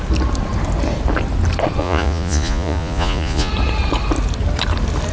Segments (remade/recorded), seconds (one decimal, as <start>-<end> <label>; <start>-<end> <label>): 0.0-1.8 recorded; 1.8-3.5 remade; 3.5-5.1 recorded